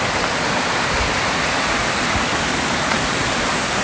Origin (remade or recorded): recorded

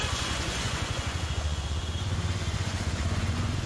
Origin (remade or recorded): remade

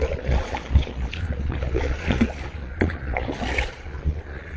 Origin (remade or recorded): remade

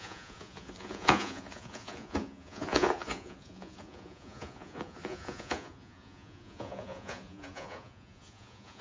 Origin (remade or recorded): remade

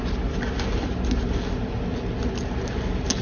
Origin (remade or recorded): recorded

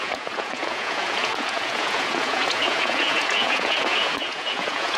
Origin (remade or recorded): remade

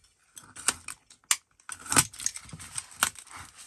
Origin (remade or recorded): recorded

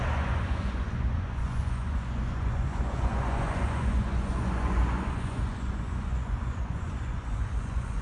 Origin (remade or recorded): remade